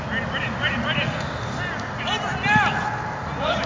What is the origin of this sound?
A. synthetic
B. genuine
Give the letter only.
B